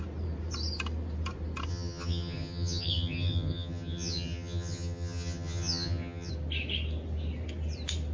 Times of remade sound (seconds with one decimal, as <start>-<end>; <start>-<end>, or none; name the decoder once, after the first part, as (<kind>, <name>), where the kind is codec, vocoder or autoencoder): 1.7-6.3 (vocoder, HiFi-GAN)